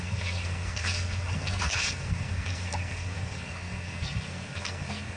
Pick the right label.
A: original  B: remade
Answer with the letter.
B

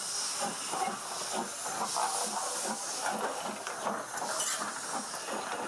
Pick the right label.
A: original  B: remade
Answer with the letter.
A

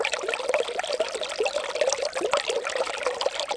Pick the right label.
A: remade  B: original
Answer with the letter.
B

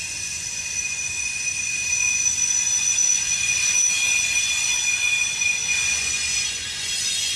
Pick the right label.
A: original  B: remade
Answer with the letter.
B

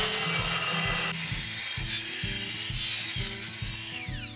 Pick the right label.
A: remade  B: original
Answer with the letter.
B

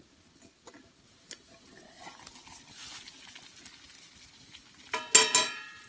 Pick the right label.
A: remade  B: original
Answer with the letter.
B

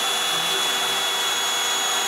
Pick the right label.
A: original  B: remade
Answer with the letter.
A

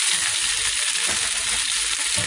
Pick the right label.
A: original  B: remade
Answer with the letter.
A